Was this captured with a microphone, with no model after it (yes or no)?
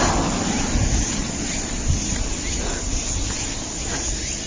yes